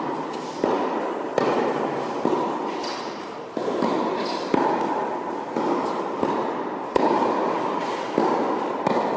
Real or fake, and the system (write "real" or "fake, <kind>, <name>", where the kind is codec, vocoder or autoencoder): real